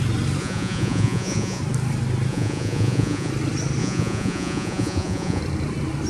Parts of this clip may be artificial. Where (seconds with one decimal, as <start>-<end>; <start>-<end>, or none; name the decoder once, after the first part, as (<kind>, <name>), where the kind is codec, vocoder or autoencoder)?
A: 0.4-1.6 (vocoder, Vocos); 2.3-3.3; 3.8-5.4